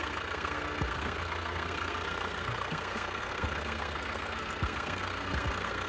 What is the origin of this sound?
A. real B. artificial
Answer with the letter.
B